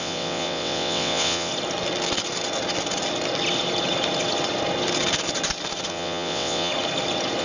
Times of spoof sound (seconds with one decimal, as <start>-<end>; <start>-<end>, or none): 0.0-1.5; 5.9-6.7